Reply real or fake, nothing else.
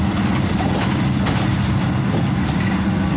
real